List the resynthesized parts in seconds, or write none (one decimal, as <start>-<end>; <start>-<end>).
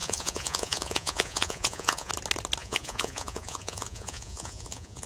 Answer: 0.0-2.1; 2.6-5.1